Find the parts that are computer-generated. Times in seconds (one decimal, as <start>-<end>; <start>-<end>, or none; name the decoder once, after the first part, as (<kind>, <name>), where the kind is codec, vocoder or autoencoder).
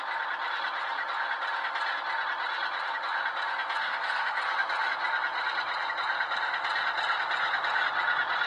3.8-4.4 (codec, SNAC)